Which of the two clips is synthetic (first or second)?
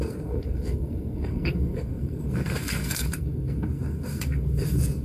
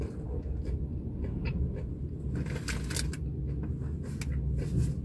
first